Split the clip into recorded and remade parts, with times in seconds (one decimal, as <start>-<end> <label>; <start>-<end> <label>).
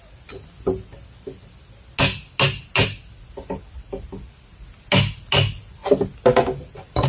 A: 0.0-7.1 recorded